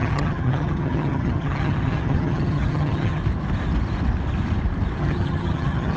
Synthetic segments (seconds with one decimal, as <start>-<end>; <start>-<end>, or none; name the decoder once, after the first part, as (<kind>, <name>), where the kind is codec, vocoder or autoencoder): 0.0-3.2 (vocoder, HiFi-GAN); 5.0-6.0

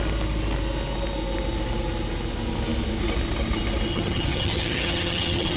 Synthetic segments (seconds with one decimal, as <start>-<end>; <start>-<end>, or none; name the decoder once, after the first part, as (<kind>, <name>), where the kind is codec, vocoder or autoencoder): 3.9-5.6 (vocoder, HiFi-GAN)

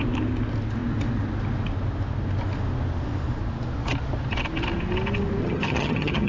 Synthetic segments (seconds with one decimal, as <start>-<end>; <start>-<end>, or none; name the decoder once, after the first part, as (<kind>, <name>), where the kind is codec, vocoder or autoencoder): 5.4-6.3 (vocoder, HiFi-GAN)

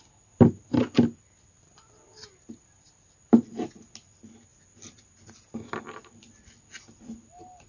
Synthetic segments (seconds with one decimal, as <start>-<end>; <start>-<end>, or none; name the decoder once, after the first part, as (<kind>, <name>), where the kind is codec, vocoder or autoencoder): none